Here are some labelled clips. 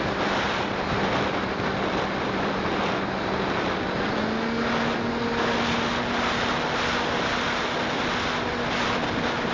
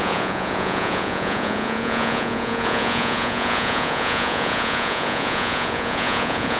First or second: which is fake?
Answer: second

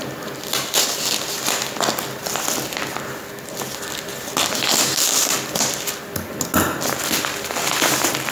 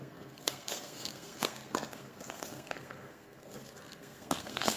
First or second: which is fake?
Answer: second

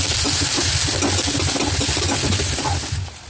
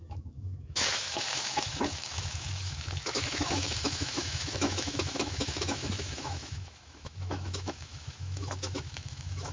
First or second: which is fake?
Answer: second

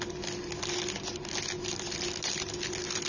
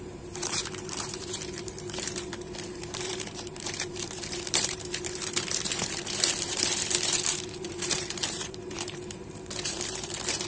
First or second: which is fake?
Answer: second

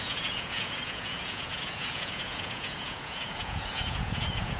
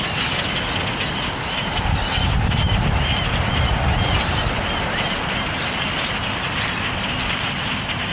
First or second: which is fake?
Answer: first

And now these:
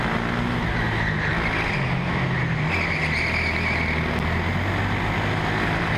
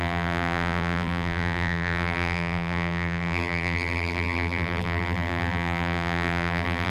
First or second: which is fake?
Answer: second